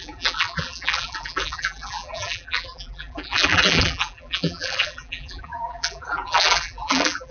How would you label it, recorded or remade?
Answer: remade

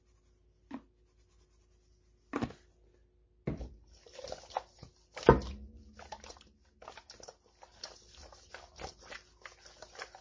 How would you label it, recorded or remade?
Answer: recorded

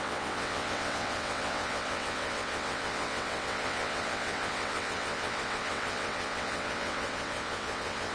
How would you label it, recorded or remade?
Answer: remade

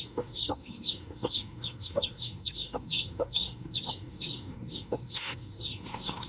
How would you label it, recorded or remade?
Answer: remade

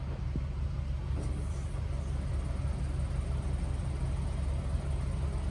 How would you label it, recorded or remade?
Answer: recorded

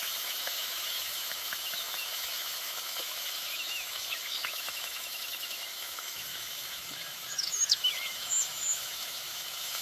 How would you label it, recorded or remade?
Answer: remade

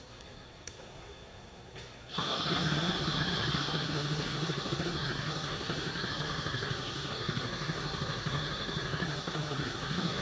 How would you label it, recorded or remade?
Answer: remade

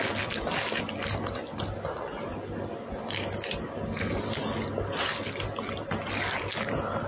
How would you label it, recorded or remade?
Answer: recorded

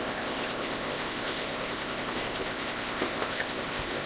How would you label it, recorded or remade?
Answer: remade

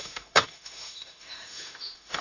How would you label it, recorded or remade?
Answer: remade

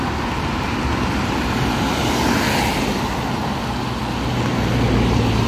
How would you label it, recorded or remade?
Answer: recorded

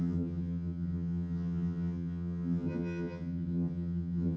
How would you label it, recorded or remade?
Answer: remade